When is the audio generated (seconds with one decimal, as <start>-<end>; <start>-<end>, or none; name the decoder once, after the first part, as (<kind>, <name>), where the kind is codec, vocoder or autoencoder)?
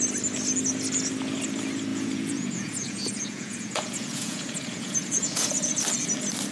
1.9-5.8 (vocoder, Vocos)